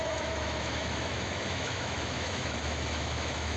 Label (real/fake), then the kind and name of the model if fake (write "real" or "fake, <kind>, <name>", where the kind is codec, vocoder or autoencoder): fake, autoencoder, DAC-VAE